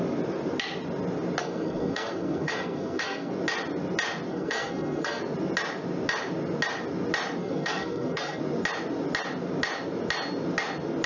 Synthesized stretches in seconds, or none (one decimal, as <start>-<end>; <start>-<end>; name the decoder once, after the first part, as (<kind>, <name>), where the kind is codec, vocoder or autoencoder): 1.4-3.3 (codec, SNAC); 4.3-5.2; 7.4-8.4